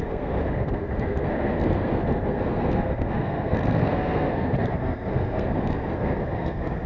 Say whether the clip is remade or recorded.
remade